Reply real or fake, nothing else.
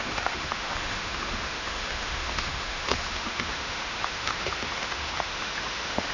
fake